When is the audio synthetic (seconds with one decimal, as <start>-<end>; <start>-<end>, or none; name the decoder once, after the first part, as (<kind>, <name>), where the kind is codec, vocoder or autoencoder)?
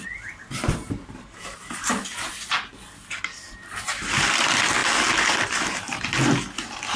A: 0.0-7.0 (vocoder, BigVGAN v2)